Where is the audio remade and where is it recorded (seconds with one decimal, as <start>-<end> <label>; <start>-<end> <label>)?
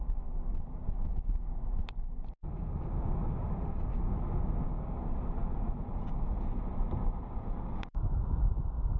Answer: 0.0-9.0 recorded